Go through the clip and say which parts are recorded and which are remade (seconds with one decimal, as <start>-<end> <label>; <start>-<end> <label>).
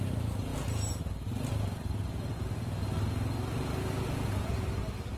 0.0-5.2 recorded